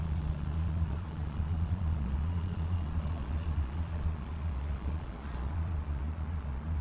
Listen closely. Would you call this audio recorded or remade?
remade